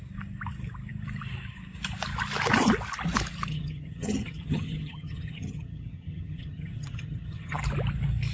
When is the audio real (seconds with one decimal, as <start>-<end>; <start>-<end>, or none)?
0.0-3.5; 7.6-8.3